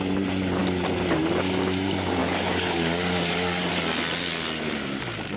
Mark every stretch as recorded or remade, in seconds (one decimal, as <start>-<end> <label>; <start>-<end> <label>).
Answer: 0.0-2.2 recorded; 2.2-3.7 remade; 3.7-5.4 recorded